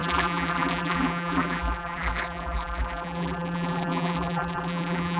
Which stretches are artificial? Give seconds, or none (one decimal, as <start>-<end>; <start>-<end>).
0.0-5.2